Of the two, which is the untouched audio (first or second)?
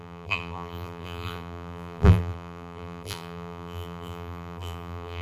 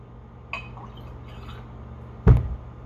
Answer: second